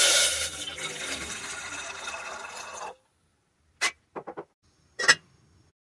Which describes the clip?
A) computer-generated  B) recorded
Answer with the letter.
B